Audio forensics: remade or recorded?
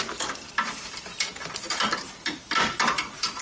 remade